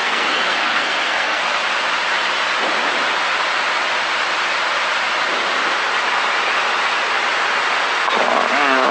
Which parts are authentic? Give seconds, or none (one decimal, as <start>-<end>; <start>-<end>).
1.6-8.9